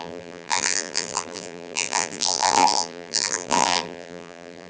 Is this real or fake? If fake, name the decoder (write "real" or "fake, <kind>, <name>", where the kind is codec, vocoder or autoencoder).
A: fake, vocoder, BigVGAN v2